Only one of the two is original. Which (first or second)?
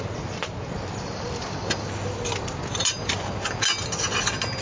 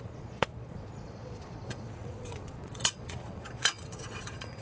first